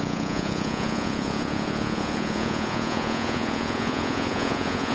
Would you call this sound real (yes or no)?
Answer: no